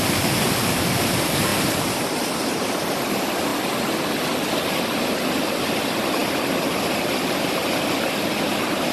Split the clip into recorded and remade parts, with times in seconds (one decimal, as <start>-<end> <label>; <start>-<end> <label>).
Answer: 0.0-1.5 remade; 1.5-3.1 recorded; 3.1-3.5 remade; 3.5-5.6 recorded; 5.6-6.2 remade; 6.2-8.5 recorded; 8.5-8.9 remade